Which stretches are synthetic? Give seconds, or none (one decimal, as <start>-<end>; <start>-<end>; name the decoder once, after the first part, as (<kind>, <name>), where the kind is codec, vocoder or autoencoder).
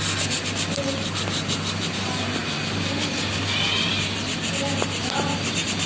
none